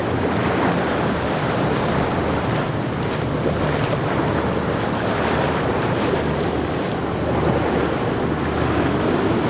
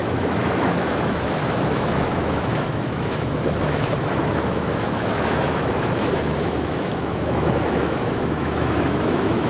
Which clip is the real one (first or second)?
first